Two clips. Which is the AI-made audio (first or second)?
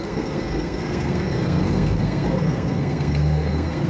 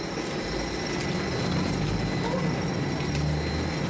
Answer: first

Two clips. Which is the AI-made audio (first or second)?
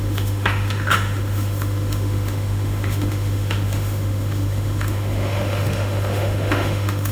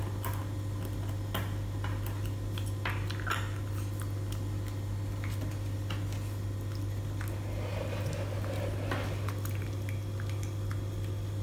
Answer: first